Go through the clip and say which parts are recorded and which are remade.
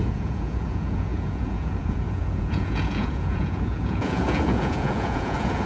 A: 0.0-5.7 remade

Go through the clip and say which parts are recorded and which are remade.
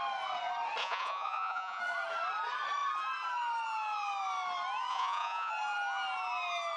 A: 0.0-0.8 recorded; 0.8-1.8 remade; 1.8-4.9 recorded; 4.9-5.5 remade; 5.5-6.8 recorded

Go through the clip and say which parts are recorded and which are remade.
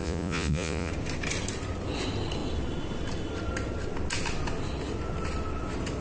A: 0.0-0.9 remade; 0.9-6.0 recorded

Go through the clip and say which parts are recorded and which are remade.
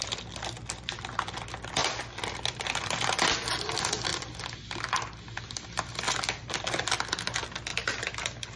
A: 0.0-8.6 recorded